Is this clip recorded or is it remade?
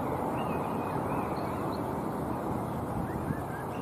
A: remade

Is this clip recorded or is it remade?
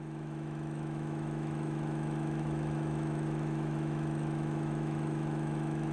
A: remade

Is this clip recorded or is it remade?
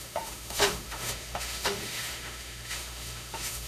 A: remade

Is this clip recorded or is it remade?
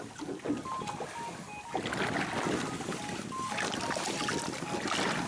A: recorded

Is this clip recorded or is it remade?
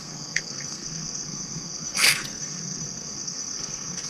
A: remade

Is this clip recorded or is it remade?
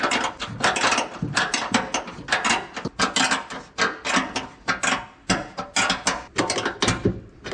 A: recorded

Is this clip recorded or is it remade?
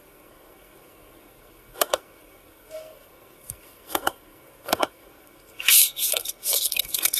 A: remade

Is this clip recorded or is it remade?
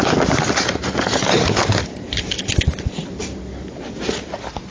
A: recorded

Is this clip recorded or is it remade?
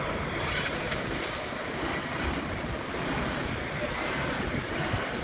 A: remade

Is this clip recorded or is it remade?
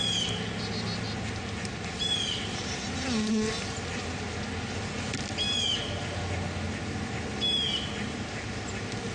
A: recorded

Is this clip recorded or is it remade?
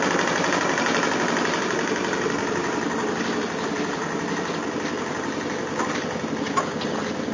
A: recorded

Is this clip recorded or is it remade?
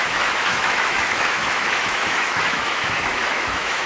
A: remade